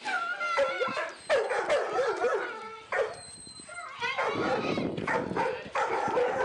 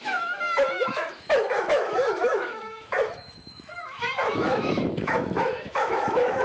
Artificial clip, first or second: second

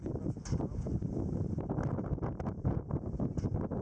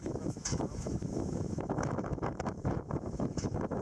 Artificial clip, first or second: second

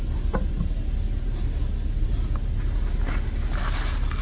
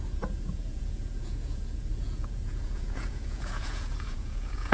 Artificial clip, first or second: second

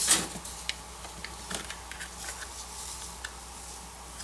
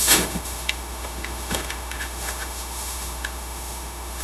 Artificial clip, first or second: second